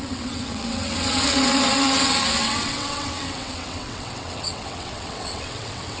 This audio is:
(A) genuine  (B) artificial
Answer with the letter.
B